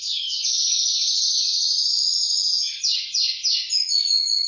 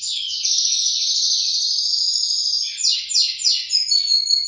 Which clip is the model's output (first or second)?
first